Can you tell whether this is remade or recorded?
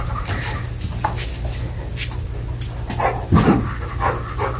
recorded